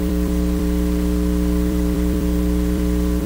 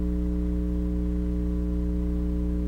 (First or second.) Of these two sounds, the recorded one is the second